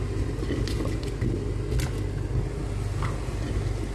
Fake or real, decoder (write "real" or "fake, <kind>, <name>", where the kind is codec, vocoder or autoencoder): real